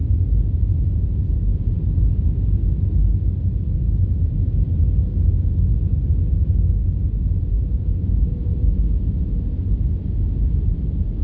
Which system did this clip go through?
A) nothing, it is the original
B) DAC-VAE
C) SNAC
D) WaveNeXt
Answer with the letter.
A